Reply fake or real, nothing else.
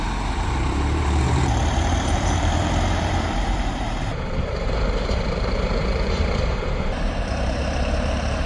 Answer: fake